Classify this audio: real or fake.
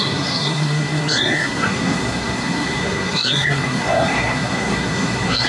fake